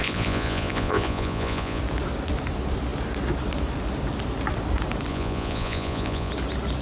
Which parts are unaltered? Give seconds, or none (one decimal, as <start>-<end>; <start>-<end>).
1.8-5.1; 6.3-6.8